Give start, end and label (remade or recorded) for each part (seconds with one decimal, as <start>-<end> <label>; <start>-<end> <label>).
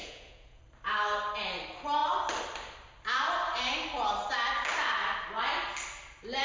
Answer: 0.0-0.6 remade; 0.6-6.4 recorded